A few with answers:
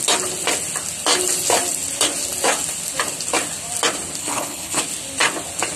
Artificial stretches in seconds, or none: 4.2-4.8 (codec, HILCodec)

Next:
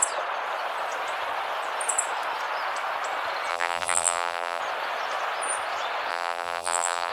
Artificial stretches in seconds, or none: 3.5-4.6 (vocoder, BigVGAN v2); 6.1-7.1

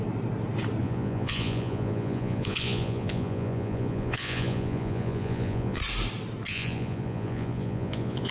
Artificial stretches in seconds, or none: 0.8-5.8 (vocoder, Vocos); 6.5-8.3

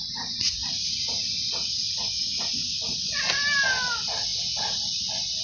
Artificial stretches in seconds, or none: none

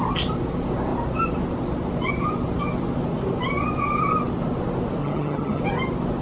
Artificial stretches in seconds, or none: 5.0-5.6 (vocoder, HiFi-GAN)

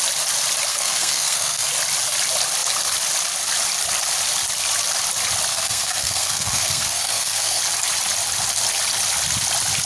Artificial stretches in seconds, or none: 0.7-1.7 (codec, SNAC); 5.5-7.6